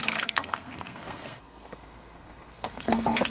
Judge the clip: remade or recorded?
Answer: remade